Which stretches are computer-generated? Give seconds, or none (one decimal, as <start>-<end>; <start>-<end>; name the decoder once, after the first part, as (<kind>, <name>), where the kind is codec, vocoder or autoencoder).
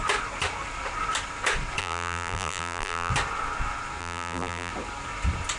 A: 1.8-3.1 (vocoder, BigVGAN v2); 4.0-4.7